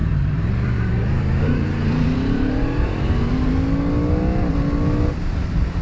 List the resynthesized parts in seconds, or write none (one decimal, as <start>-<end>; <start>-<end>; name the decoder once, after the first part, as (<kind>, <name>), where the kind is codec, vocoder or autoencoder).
0.0-3.5 (vocoder, BigVGAN v2)